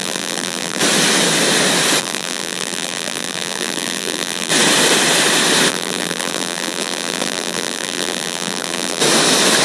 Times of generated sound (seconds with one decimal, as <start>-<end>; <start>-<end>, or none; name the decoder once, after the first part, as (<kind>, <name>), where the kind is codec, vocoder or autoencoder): 0.0-0.8 (vocoder, BigVGAN v2); 2.0-4.5; 5.7-9.0